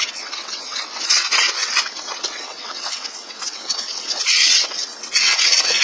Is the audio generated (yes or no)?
yes